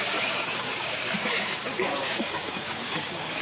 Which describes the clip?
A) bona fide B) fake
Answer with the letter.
B